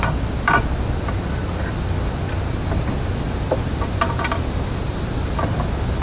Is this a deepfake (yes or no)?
no